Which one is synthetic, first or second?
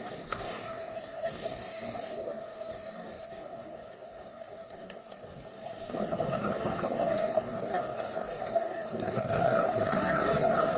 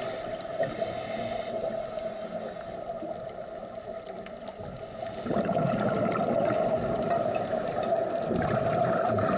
first